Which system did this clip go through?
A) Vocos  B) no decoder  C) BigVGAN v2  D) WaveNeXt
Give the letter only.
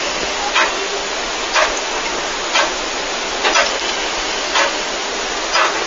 B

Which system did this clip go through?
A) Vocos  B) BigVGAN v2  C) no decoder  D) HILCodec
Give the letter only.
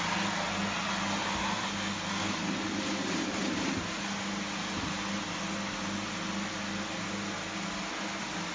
C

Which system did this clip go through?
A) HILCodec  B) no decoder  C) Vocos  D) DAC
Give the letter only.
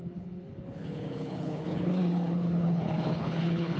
A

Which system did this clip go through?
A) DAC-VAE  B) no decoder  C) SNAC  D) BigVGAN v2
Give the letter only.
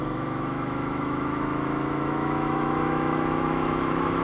A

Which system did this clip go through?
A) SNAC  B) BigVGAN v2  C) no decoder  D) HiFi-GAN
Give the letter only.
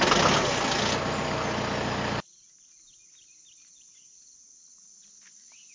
C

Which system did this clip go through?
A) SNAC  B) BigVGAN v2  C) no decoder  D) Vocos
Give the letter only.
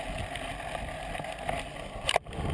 C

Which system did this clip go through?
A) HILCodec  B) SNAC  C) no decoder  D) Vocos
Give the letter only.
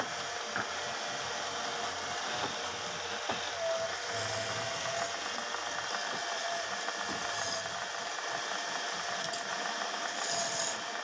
C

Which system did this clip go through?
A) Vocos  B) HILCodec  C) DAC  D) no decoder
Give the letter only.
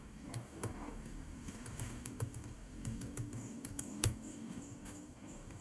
C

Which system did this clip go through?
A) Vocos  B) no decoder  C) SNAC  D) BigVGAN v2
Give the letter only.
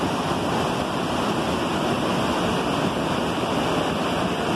B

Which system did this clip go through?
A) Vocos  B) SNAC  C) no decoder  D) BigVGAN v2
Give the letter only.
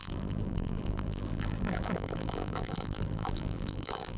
D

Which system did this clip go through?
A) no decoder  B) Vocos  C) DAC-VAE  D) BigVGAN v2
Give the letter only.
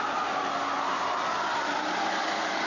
A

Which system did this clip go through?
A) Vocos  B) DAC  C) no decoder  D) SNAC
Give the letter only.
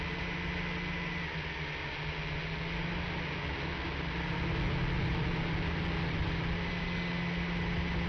C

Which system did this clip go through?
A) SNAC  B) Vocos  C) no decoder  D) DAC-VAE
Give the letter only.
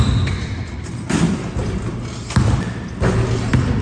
C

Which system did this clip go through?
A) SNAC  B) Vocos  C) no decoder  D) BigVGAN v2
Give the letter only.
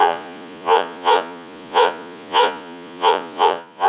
B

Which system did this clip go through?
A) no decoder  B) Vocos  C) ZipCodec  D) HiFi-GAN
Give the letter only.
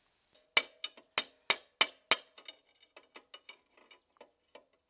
A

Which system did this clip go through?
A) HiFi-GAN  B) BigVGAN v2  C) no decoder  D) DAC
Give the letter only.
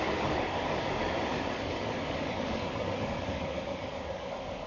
D